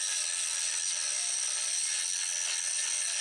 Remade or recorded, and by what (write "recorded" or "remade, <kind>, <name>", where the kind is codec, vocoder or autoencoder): recorded